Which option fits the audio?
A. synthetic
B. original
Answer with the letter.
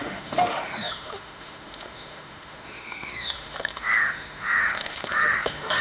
A